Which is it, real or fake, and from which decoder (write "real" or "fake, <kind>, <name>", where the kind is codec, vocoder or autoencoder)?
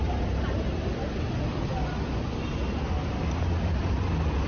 real